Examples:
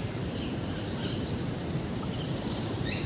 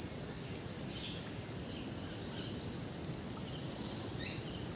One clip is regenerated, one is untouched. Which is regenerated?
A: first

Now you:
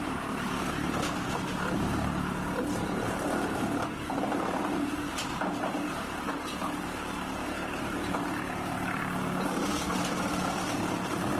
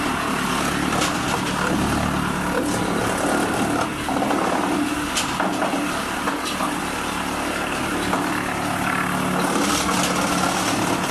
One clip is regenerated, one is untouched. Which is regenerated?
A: first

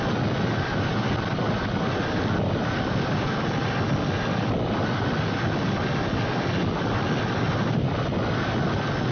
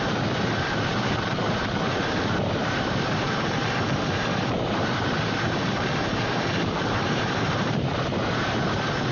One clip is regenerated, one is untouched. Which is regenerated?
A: second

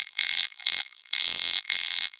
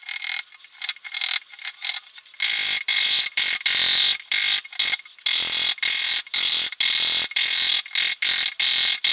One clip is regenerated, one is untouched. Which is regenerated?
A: first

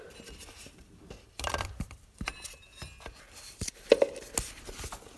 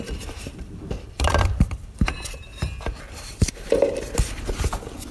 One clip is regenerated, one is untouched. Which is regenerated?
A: second